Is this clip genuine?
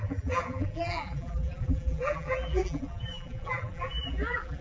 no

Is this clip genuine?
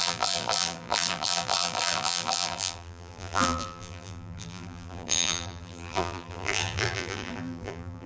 no